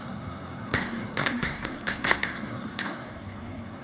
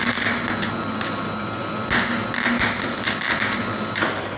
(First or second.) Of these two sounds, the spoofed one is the first